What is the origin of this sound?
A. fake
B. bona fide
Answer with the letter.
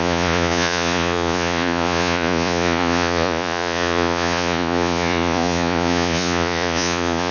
A